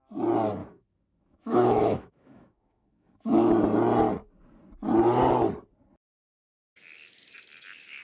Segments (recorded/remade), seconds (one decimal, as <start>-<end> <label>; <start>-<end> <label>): 0.0-0.6 recorded; 0.6-3.5 remade; 3.5-8.0 recorded